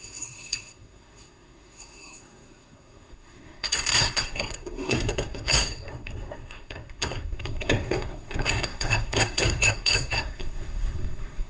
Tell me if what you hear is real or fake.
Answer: fake